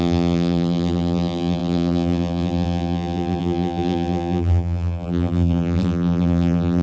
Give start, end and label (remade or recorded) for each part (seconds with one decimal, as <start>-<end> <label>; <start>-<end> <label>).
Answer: 0.0-6.8 remade